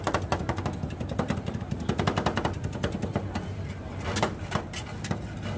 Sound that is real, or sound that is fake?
real